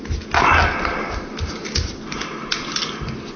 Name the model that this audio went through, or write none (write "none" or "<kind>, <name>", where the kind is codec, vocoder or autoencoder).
none